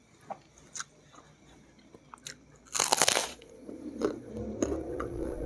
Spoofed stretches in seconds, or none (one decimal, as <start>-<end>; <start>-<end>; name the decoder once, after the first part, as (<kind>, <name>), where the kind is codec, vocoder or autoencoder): 3.2-4.3 (vocoder, Vocos); 4.8-5.5

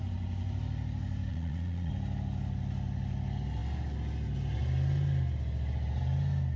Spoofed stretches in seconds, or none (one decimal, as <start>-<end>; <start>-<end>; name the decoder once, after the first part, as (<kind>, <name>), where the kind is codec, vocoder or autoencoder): 1.3-1.9 (vocoder, Vocos)

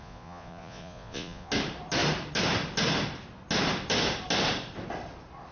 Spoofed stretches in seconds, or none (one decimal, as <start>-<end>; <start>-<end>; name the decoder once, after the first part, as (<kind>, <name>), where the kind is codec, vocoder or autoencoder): 0.0-1.5 (vocoder, Vocos)

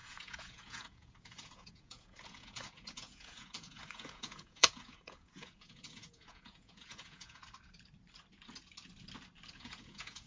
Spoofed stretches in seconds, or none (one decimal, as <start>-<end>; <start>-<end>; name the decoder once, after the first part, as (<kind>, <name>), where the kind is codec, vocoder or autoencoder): 0.0-7.4 (vocoder, Vocos); 9.5-10.3

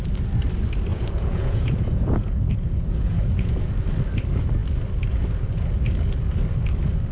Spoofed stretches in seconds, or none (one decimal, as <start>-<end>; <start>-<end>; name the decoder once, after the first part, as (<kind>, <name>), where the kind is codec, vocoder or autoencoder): 0.9-3.7 (vocoder, Vocos)

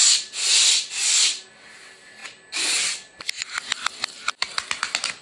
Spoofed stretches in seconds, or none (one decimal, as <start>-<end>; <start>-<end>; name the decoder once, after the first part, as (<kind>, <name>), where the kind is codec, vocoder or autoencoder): none

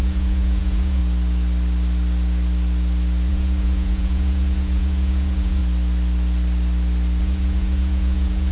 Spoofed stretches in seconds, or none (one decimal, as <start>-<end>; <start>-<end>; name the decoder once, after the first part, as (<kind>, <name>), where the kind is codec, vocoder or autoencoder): 0.0-1.0 (vocoder, Vocos); 3.3-5.6; 7.2-8.5

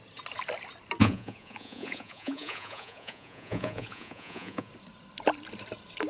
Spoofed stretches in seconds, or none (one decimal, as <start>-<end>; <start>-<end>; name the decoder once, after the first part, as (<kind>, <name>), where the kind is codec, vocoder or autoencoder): 1.0-4.7 (vocoder, Vocos)